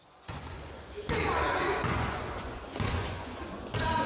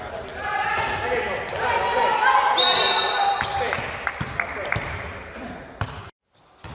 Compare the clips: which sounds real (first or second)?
second